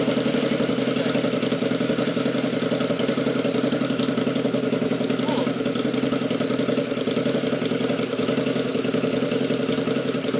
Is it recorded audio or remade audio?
recorded